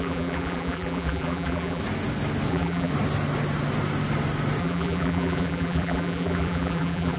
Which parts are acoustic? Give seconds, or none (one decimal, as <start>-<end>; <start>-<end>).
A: 1.8-2.5; 2.9-4.6